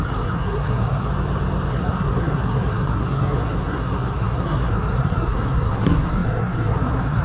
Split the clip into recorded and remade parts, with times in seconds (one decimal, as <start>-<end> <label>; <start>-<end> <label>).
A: 0.0-1.1 remade; 1.1-1.7 recorded; 1.7-7.2 remade